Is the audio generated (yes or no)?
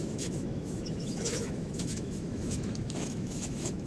yes